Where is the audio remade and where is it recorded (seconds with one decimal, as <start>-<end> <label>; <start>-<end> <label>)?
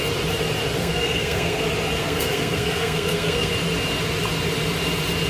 0.0-0.8 recorded; 0.8-1.6 remade; 1.6-2.0 recorded; 2.0-3.5 remade; 3.5-5.3 recorded